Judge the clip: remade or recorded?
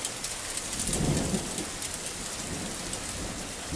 recorded